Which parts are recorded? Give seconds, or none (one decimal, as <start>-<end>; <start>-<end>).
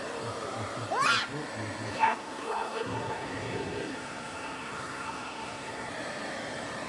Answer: 0.0-1.9; 5.9-6.9